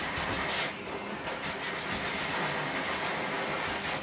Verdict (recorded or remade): recorded